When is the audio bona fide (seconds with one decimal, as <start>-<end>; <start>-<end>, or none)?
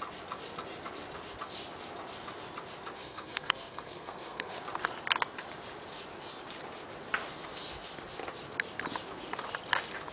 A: 0.0-3.0; 4.6-10.1